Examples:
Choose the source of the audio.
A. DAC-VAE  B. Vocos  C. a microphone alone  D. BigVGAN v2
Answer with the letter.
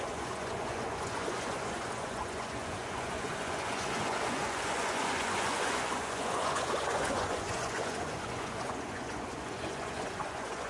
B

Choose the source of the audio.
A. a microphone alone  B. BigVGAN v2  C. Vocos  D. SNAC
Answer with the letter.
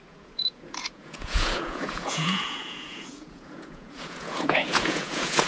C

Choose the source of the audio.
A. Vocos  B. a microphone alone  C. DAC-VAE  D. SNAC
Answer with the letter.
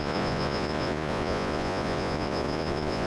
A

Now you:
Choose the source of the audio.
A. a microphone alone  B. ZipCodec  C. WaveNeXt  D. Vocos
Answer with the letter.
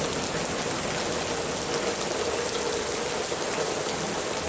A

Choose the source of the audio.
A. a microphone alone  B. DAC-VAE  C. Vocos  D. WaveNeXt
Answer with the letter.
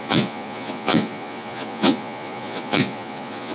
C